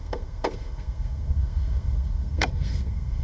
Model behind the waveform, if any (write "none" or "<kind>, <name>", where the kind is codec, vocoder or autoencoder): codec, SNAC